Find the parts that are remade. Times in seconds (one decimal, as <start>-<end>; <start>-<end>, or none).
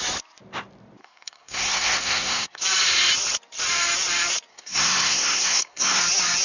1.0-2.6; 4.5-6.0